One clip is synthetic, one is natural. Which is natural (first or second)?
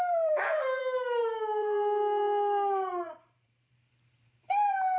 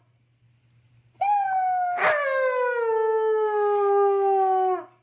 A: second